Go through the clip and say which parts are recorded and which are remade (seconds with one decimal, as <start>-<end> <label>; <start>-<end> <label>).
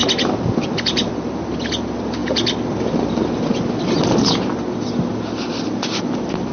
0.0-6.5 recorded